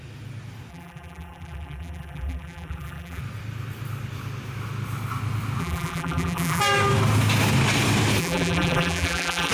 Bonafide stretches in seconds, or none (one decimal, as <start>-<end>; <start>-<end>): 0.0-0.7; 3.2-5.6; 6.6-8.2